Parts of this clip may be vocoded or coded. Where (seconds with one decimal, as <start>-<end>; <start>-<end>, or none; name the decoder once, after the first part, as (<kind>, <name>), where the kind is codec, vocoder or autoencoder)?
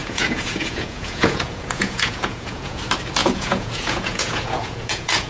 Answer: 0.0-2.8 (vocoder, Vocos); 3.2-5.3